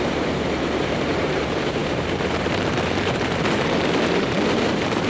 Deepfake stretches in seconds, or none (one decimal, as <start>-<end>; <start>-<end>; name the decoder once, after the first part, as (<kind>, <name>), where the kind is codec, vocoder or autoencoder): 0.0-5.1 (vocoder, BigVGAN v2)